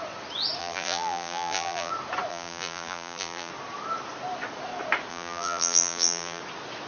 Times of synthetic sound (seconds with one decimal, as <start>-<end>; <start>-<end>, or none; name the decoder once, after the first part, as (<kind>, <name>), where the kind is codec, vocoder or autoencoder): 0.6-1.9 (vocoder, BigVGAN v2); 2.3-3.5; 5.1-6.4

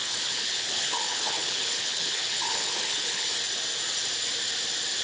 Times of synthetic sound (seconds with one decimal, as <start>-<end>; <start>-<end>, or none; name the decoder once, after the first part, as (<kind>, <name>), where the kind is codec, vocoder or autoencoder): 0.0-3.3 (codec, HILCodec)

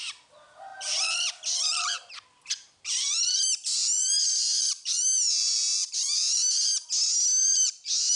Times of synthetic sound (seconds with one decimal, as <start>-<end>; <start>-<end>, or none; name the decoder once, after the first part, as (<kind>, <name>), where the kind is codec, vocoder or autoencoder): 0.0-6.7 (vocoder, BigVGAN v2); 7.4-8.2